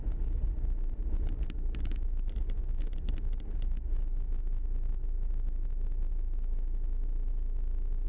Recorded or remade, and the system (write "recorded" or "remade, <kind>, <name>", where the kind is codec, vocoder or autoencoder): recorded